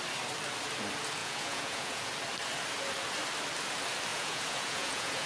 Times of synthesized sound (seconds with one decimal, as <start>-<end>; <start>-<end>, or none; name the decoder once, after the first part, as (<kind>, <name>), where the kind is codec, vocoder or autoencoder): 1.2-2.1 (vocoder, Vocos); 4.1-5.3